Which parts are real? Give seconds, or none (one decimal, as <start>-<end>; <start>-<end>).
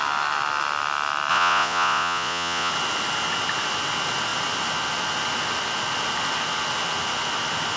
0.0-1.3; 2.7-7.8